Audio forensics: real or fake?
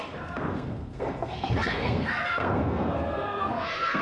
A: fake